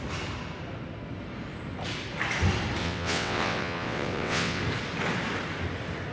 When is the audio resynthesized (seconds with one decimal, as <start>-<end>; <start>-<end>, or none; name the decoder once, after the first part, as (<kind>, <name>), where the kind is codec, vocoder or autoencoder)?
2.8-4.6 (vocoder, WaveNeXt)